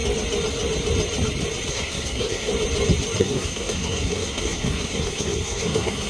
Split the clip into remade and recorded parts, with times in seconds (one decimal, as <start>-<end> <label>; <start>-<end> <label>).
0.0-1.7 recorded; 1.7-2.5 remade; 2.5-3.2 recorded; 3.2-6.1 remade